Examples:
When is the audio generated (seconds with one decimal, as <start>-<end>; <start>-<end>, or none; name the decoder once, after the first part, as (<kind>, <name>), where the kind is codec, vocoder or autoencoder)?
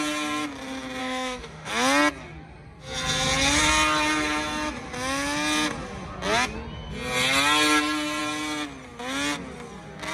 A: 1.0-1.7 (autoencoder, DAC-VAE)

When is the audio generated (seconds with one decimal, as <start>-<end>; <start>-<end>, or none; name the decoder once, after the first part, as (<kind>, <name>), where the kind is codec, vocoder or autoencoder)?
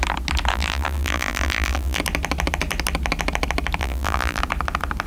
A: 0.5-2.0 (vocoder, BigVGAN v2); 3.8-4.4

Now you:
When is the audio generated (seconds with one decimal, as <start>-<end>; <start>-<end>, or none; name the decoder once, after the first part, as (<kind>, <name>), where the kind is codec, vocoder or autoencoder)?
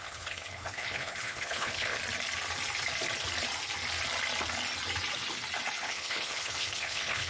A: 0.0-2.0 (codec, HILCodec); 5.8-7.3